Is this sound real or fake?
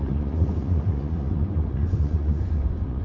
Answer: fake